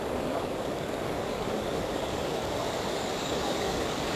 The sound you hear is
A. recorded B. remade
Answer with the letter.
B